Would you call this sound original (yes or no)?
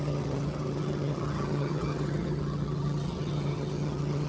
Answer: no